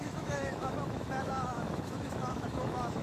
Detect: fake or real fake